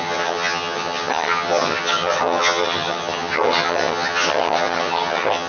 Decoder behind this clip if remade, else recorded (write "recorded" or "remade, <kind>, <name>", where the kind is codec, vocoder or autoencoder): remade, vocoder, HiFi-GAN